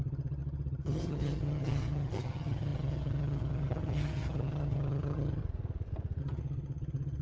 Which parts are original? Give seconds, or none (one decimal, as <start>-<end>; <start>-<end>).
5.4-6.2